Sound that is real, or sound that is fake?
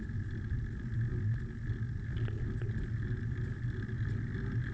real